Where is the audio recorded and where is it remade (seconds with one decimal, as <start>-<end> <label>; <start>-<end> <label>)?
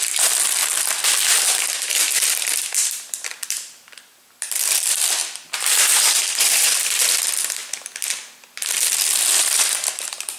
0.0-0.6 remade; 0.6-1.6 recorded; 1.6-7.6 remade; 7.6-8.8 recorded; 8.8-10.4 remade